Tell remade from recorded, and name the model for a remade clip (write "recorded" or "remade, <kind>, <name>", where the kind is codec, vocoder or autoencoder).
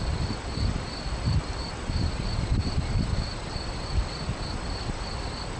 recorded